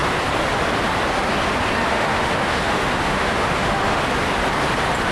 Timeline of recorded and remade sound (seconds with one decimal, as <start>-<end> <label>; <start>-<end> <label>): 0.0-1.9 recorded; 1.9-4.0 remade; 4.0-5.1 recorded